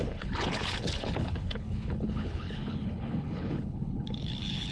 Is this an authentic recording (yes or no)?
no